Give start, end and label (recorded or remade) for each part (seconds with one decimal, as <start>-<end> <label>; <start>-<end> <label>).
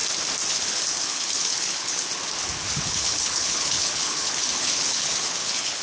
0.0-0.5 recorded; 0.5-2.1 remade; 2.1-2.7 recorded; 2.7-5.8 remade